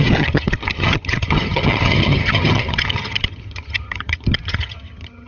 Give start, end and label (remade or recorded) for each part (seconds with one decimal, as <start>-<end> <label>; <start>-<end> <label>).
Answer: 0.0-5.3 remade